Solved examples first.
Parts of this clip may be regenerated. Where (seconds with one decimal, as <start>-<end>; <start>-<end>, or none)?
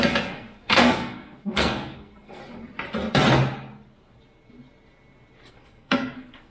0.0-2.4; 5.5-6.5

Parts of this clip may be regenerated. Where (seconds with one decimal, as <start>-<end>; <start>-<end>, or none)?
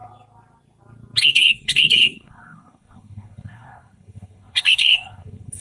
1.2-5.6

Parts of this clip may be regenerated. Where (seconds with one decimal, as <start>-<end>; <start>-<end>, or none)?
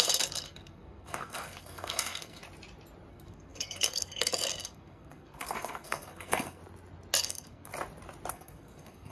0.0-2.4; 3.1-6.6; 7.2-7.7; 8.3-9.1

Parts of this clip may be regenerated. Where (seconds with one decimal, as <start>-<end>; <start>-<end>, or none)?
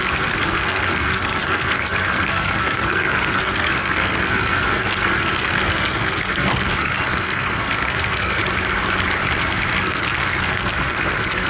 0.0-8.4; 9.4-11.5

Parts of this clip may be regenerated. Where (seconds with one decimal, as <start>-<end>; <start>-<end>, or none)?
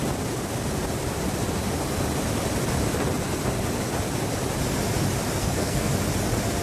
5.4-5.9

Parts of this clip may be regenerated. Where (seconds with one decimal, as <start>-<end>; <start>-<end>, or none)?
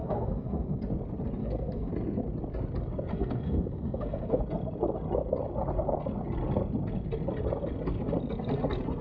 0.0-0.8; 1.4-1.9; 3.1-4.4